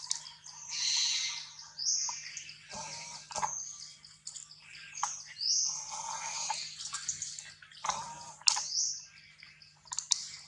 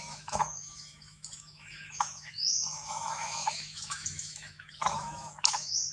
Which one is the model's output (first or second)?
second